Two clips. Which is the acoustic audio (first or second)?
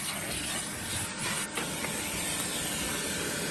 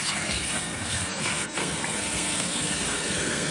first